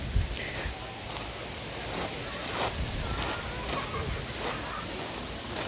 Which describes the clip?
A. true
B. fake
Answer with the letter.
A